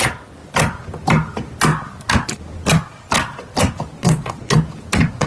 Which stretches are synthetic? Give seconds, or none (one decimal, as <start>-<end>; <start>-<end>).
4.0-4.6